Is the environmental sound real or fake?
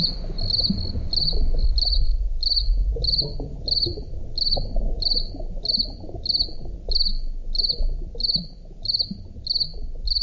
real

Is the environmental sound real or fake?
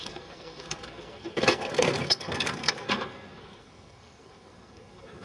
fake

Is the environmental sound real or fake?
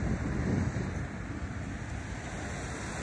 real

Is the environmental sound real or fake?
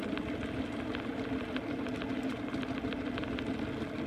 real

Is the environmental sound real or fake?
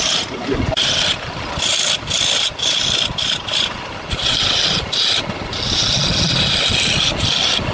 real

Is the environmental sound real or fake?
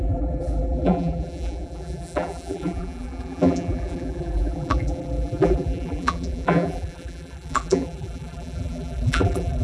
fake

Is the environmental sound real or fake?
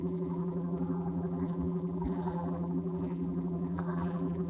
fake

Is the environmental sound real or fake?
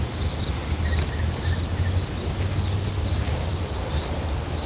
real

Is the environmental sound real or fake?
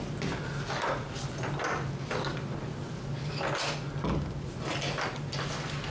real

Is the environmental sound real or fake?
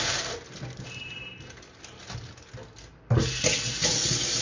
real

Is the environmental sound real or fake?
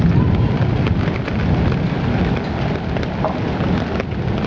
real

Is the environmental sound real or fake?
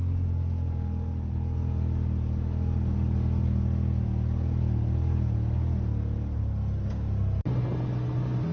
real